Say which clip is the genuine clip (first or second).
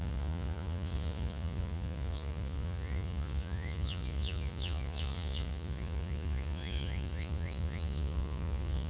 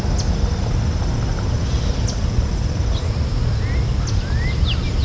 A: second